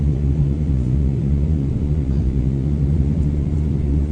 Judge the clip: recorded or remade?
remade